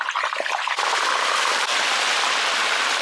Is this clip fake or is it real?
real